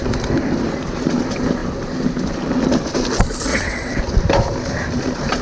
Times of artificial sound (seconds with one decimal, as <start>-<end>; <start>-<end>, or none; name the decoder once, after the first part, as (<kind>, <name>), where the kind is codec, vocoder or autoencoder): 3.5-4.0 (vocoder, WaveNeXt)